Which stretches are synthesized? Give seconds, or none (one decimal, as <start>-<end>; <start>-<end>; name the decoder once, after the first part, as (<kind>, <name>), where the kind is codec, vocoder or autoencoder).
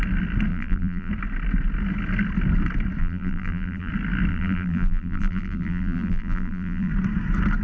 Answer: 0.5-1.1 (vocoder, BigVGAN v2); 3.0-3.9; 4.3-6.9